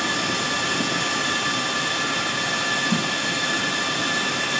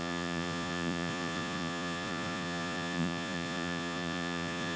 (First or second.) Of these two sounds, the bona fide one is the first